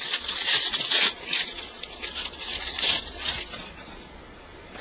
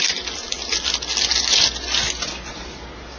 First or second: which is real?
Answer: second